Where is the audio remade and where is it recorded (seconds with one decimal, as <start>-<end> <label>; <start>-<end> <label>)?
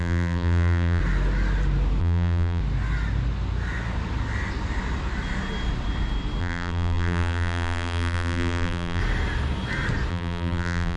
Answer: 0.0-1.0 remade; 1.0-2.0 recorded; 2.0-2.6 remade; 2.6-6.4 recorded; 6.4-9.0 remade; 9.0-10.1 recorded; 10.1-11.0 remade